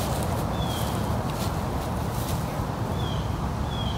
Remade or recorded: recorded